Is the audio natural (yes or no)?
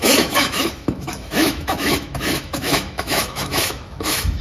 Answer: no